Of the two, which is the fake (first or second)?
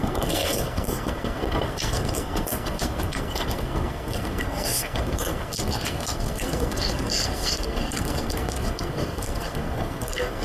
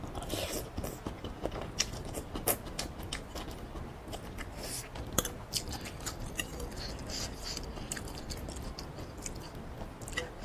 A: first